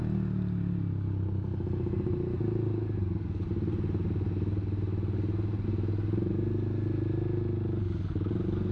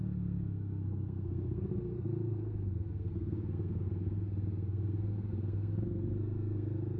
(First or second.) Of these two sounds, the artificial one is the second